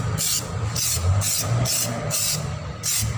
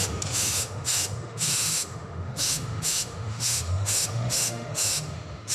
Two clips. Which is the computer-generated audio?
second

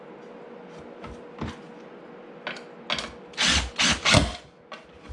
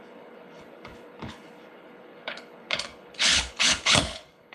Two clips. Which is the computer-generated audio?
second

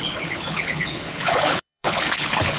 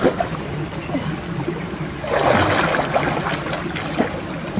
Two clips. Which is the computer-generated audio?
first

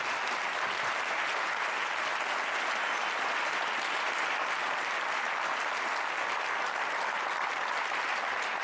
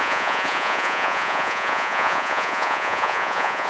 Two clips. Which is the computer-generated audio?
second